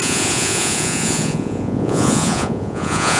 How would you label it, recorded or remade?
remade